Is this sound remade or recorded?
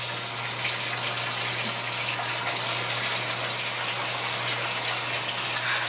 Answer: recorded